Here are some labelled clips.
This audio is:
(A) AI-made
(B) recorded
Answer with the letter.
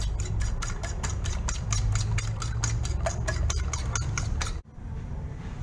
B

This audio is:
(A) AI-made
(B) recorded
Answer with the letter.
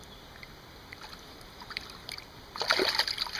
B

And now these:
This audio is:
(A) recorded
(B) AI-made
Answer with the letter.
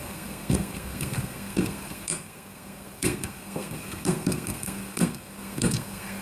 B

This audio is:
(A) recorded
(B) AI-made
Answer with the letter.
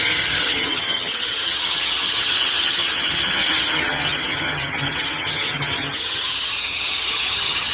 B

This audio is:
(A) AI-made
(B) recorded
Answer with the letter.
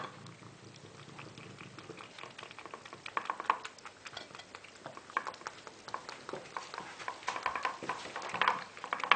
B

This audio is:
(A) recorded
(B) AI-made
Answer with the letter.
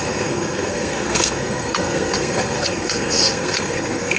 B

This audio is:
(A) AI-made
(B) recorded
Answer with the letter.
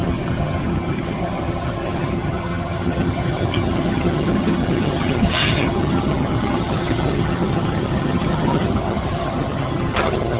A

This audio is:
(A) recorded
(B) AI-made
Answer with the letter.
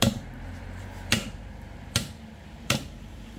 B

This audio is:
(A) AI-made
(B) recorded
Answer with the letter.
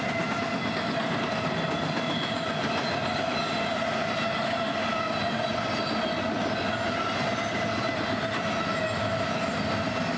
B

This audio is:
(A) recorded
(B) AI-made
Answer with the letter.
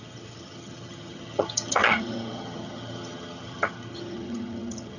B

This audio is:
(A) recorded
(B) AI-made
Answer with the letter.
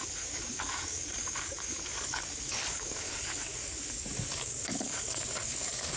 B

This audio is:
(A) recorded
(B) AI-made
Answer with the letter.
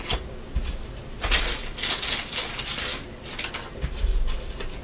A